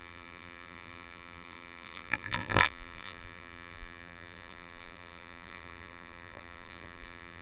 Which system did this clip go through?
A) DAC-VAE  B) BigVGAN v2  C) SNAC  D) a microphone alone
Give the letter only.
B